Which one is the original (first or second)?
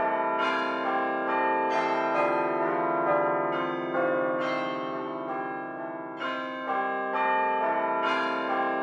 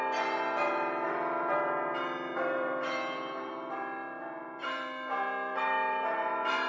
first